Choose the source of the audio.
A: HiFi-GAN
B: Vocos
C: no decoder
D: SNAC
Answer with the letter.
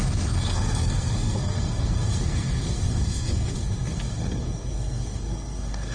D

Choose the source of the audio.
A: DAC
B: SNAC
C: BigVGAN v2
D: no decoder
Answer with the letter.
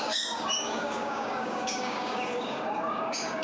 A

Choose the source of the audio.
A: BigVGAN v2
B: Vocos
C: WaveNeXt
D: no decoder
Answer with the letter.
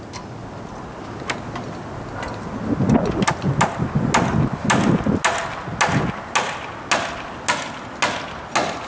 D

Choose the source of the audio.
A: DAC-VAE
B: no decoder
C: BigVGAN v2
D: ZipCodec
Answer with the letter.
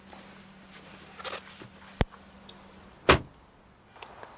B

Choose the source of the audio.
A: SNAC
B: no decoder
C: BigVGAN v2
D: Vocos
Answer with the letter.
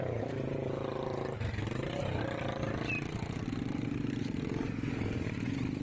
B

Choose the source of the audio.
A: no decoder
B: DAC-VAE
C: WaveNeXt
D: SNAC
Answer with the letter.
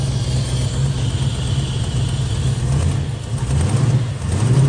A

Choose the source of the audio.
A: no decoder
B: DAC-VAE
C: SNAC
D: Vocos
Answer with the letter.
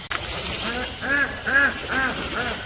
A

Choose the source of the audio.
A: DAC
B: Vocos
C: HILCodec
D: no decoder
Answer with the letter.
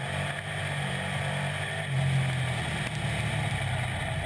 D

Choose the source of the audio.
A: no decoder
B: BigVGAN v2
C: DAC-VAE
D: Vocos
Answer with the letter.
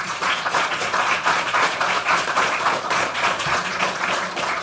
D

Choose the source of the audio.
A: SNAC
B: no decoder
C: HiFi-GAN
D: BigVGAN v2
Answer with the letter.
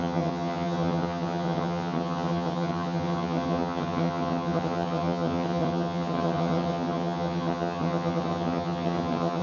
C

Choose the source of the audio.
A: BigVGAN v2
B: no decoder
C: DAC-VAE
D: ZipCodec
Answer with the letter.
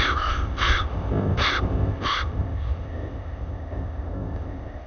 D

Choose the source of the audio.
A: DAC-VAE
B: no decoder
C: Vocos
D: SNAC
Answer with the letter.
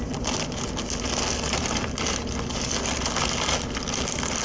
B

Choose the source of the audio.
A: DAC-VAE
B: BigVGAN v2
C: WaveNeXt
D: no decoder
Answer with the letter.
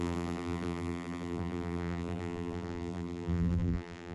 B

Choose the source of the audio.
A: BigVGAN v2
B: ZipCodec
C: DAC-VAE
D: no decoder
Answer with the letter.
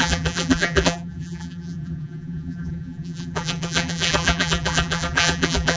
A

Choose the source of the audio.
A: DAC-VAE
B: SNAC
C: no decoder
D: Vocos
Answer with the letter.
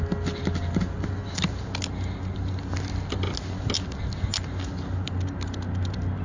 C